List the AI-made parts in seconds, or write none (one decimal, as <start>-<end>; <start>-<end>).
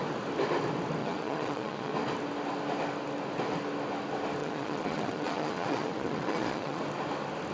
1.0-1.9; 4.4-6.8